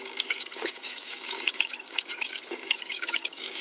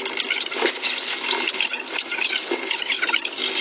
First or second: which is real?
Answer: second